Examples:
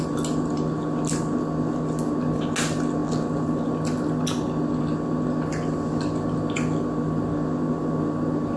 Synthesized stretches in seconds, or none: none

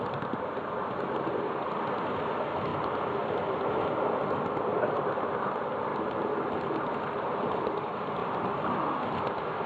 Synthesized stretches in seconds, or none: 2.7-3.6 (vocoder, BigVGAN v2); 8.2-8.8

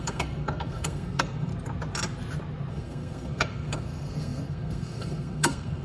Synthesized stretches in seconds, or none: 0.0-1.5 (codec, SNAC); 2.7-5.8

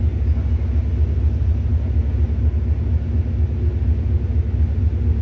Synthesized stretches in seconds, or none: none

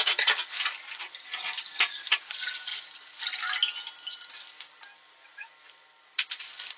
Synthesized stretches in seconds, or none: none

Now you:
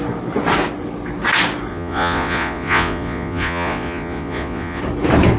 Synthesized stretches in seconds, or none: 1.7-4.8 (vocoder, Vocos)

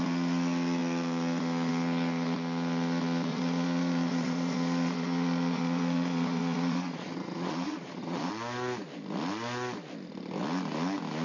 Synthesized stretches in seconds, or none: 3.3-8.3 (vocoder, Vocos)